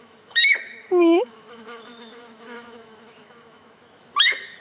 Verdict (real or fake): fake